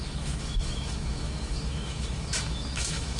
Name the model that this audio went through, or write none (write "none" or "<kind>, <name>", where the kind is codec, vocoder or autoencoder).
autoencoder, DAC-VAE